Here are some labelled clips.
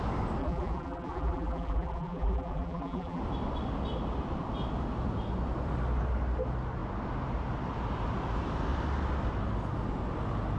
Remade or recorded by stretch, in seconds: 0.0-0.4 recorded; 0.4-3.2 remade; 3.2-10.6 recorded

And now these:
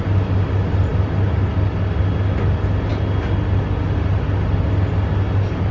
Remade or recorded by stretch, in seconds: 0.0-5.7 recorded

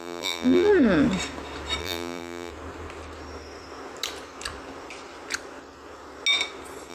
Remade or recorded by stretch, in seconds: 0.0-0.7 remade; 0.7-1.8 recorded; 1.8-2.5 remade; 2.5-6.9 recorded

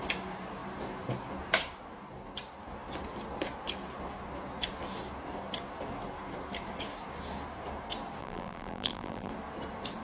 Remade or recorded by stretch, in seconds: 0.0-8.2 recorded; 8.2-9.3 remade; 9.3-10.0 recorded

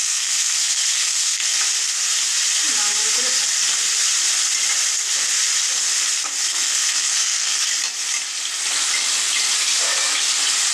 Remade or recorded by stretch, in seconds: 0.0-1.6 remade; 1.6-6.5 recorded; 6.5-7.6 remade; 7.6-10.7 recorded

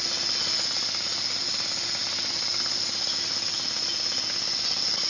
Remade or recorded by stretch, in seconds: 0.0-5.1 recorded

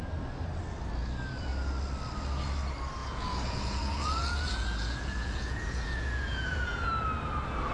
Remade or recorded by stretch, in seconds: 0.0-3.0 recorded; 3.0-6.9 remade; 6.9-7.7 recorded

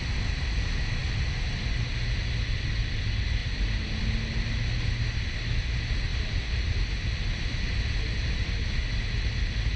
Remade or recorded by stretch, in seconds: 0.0-9.8 recorded